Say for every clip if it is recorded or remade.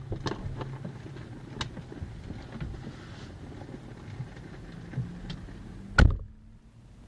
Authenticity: recorded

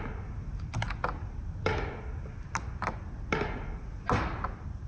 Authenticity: recorded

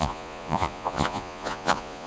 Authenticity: remade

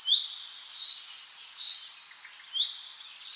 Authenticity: remade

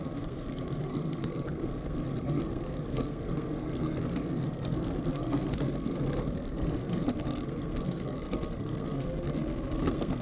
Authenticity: remade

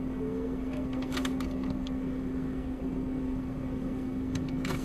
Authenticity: remade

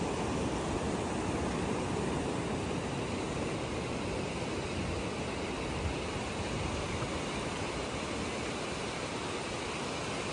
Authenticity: recorded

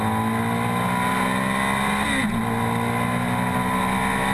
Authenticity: recorded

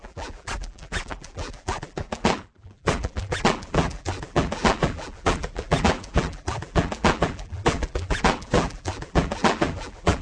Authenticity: remade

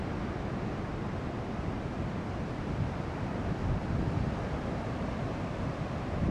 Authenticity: recorded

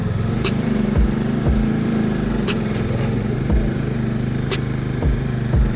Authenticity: remade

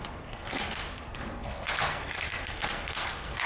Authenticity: remade